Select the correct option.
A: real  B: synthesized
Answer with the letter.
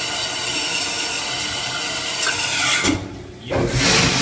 A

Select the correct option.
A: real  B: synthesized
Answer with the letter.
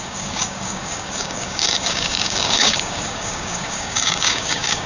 B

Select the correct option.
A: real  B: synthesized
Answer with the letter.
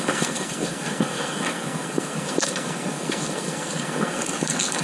B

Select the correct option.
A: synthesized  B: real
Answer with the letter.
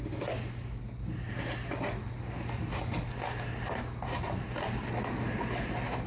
B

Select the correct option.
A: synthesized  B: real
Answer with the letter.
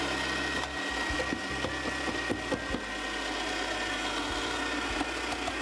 B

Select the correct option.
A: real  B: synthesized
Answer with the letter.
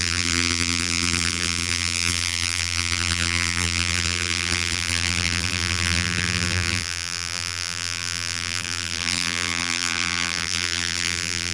B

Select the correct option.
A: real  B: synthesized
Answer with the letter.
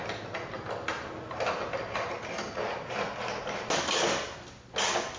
A